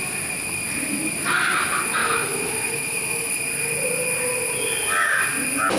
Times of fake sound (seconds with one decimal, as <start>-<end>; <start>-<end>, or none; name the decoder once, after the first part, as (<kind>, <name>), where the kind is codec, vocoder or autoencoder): 2.0-3.4 (autoencoder, DAC-VAE)